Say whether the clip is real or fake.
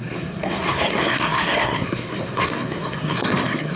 fake